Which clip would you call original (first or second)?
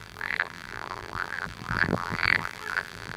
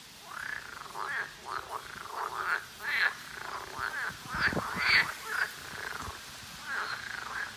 second